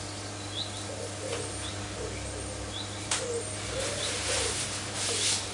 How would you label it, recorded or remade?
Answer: recorded